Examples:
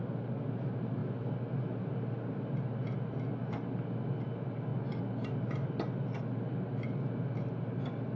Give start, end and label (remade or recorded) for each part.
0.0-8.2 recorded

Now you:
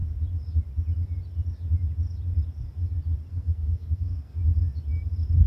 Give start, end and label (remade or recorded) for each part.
0.0-3.3 recorded; 3.3-4.4 remade; 4.4-5.5 recorded